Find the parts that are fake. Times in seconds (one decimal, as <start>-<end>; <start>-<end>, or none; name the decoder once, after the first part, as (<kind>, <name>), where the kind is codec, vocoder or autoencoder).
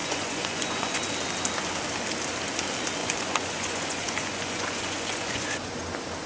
0.0-1.1 (vocoder, Vocos); 3.0-5.7